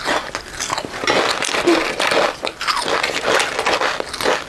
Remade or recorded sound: recorded